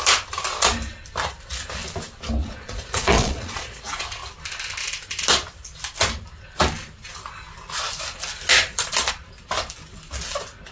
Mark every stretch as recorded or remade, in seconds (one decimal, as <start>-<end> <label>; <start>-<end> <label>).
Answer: 0.0-2.4 recorded; 2.4-3.8 remade; 3.8-10.7 recorded